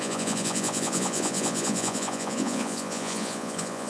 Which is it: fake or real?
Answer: fake